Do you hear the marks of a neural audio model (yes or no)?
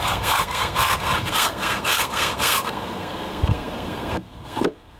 yes